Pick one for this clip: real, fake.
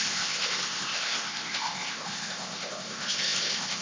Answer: fake